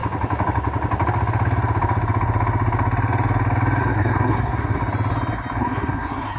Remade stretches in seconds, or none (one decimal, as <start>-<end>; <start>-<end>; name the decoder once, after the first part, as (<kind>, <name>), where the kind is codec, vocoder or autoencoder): 3.8-4.8 (codec, SNAC); 5.6-6.4